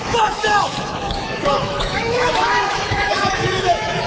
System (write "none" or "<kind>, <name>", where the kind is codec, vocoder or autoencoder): autoencoder, DAC-VAE